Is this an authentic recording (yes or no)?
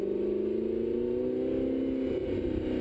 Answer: yes